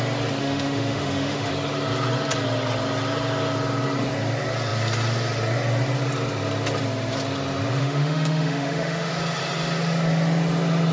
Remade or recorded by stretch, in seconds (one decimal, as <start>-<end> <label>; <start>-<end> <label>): 0.0-0.4 recorded; 0.4-1.5 remade; 1.5-7.8 recorded; 7.8-9.1 remade; 9.1-10.9 recorded